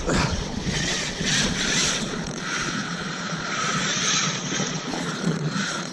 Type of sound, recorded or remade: remade